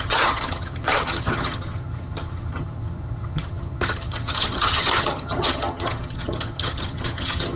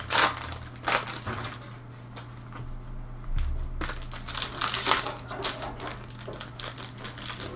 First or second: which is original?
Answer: second